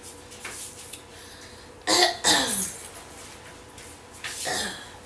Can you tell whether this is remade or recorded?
recorded